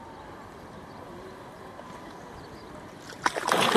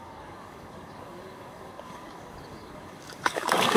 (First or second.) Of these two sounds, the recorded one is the first